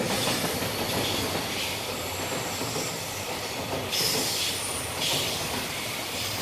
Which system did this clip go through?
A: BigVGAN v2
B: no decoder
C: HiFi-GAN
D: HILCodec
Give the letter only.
B